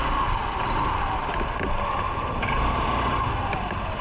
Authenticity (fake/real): real